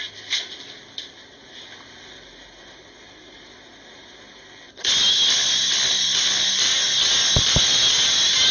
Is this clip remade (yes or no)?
no